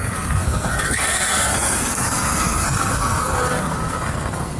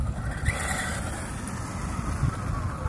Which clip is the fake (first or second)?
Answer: first